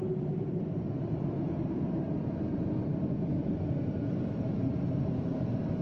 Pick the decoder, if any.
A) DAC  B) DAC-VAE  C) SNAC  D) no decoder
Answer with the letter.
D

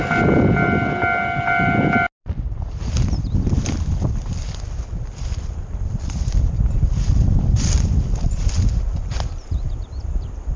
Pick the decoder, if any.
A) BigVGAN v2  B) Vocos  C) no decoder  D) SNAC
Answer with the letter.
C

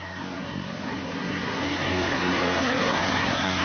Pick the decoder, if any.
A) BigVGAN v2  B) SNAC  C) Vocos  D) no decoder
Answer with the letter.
B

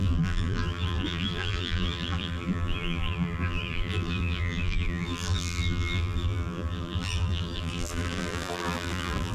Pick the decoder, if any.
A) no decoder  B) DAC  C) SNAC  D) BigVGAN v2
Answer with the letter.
D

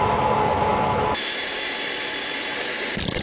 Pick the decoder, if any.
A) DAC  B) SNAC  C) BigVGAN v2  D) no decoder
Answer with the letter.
C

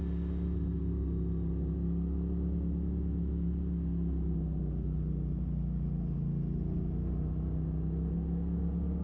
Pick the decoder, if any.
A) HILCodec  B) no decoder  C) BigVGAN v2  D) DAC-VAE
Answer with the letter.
B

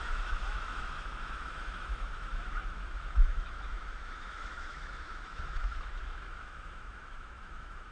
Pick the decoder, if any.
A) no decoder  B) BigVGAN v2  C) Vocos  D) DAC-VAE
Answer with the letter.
D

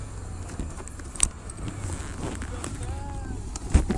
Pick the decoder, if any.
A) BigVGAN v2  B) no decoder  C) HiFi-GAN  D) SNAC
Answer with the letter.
B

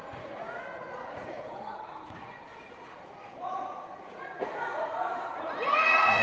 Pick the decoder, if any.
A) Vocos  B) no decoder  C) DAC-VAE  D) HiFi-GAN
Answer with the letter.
A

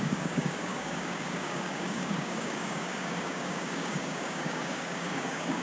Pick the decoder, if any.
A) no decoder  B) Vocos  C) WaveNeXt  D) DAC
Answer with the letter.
D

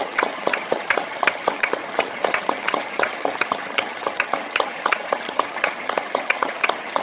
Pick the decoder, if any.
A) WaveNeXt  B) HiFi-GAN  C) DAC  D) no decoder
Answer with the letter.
B